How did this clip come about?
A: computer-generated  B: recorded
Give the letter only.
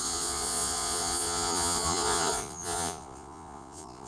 A